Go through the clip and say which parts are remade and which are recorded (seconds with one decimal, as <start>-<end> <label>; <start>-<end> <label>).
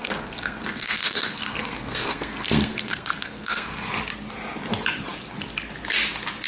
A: 0.0-3.9 remade; 3.9-6.5 recorded